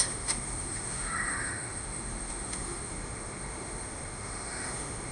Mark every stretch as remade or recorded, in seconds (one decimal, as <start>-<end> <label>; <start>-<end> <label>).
0.0-5.1 remade